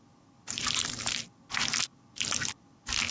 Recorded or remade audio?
recorded